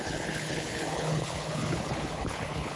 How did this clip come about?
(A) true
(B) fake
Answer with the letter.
B